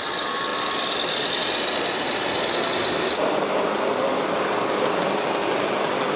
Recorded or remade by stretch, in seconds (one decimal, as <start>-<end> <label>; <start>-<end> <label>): 0.0-0.5 recorded; 0.5-4.2 remade; 4.2-6.2 recorded